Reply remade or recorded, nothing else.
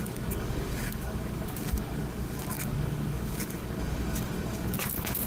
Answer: remade